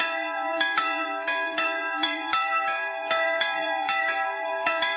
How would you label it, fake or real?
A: fake